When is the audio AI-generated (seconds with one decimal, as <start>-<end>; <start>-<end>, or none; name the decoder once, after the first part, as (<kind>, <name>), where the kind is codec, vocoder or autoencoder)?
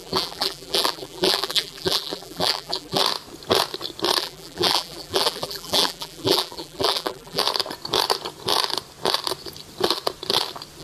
0.0-3.0 (vocoder, BigVGAN v2); 4.2-7.4